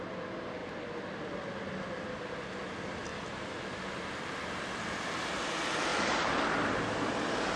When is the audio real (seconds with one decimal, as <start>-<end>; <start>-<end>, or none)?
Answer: 0.0-7.6

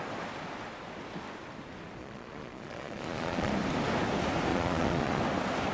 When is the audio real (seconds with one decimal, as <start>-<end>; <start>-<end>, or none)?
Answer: 0.0-2.0; 3.5-4.5; 5.2-5.7

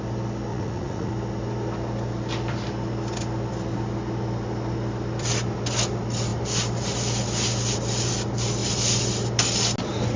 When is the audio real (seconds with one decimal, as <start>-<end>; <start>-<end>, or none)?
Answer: 0.0-0.5; 1.1-10.2

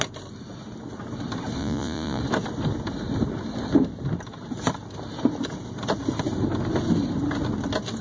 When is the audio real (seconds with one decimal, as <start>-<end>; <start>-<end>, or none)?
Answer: 0.0-1.6; 2.2-8.0

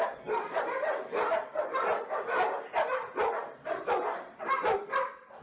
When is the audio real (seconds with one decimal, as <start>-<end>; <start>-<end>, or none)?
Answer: 0.0-5.4